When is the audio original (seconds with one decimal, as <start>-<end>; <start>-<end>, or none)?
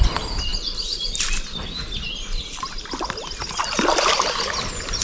0.0-5.0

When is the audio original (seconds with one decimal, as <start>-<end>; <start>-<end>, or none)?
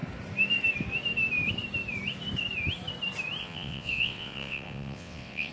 0.0-3.4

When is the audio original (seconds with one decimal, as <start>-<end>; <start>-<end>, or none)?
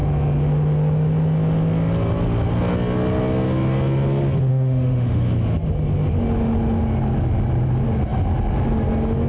0.0-4.5; 5.3-9.3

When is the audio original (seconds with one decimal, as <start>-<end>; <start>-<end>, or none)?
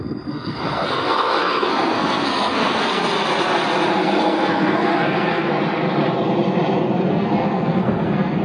3.0-3.9; 5.5-7.1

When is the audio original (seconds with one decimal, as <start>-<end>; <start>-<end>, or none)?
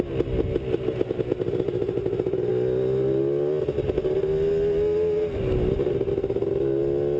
0.0-7.2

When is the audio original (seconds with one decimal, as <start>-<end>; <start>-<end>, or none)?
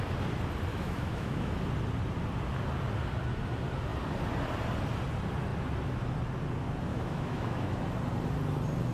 0.0-0.7; 1.5-6.9; 7.8-8.9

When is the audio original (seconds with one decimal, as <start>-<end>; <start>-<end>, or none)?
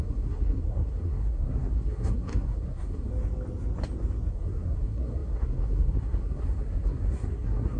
3.1-4.3